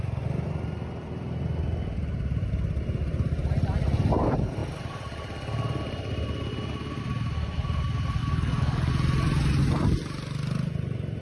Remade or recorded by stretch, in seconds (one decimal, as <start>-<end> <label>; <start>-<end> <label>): 0.0-8.2 recorded; 8.2-8.9 remade; 8.9-11.2 recorded